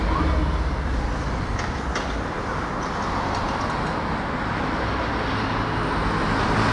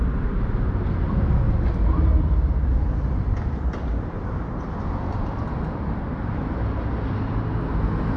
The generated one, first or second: second